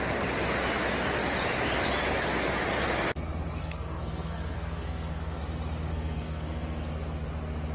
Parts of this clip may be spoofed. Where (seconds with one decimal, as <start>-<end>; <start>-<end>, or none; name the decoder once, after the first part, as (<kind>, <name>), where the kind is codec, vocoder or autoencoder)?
3.6-5.4 (codec, SNAC); 5.9-6.8